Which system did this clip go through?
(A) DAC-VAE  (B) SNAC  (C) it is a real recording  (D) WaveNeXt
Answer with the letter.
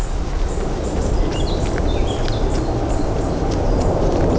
C